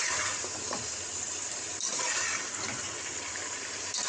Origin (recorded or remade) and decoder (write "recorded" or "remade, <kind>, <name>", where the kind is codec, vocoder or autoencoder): remade, vocoder, BigVGAN v2